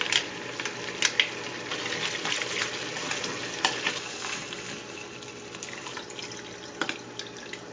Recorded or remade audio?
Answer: recorded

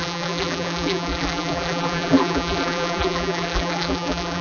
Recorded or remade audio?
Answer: remade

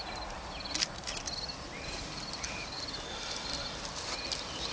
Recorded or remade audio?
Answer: recorded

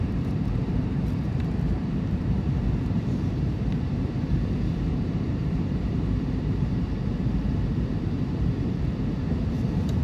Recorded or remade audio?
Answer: remade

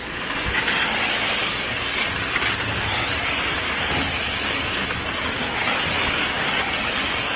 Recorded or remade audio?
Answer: recorded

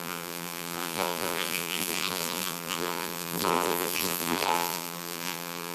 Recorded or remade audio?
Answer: remade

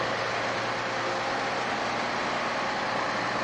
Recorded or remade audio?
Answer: recorded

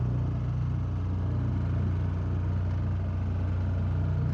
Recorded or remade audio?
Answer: recorded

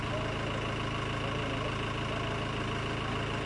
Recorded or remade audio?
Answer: recorded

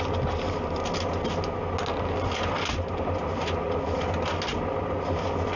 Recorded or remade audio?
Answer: recorded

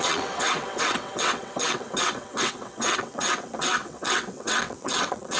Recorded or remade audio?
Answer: remade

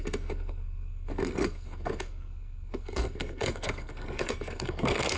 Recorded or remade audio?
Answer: remade